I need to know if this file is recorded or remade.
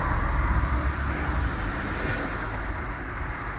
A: recorded